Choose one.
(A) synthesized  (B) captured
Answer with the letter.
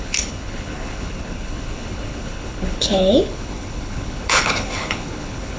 A